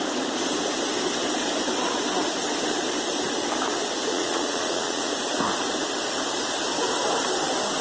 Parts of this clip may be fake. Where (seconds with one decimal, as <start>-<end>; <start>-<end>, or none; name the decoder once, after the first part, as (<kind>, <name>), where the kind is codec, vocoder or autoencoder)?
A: 4.1-5.1 (vocoder, Vocos)